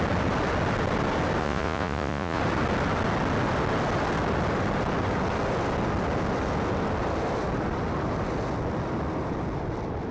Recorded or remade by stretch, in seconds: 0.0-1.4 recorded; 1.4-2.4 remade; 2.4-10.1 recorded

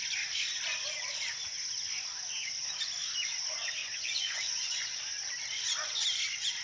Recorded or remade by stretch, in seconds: 0.0-3.8 recorded; 3.8-5.0 remade; 5.0-6.6 recorded

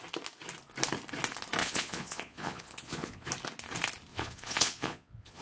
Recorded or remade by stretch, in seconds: 0.0-1.6 recorded; 1.6-3.3 remade; 3.3-4.1 recorded; 4.1-5.4 remade

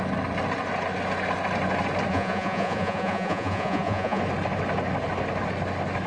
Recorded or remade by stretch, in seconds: 0.0-2.1 recorded; 2.1-4.2 remade; 4.2-6.1 recorded